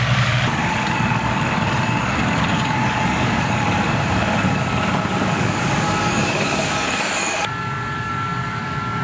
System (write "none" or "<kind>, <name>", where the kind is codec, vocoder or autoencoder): codec, DAC